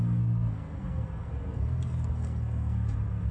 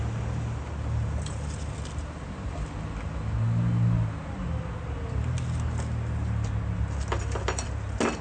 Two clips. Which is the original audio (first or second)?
second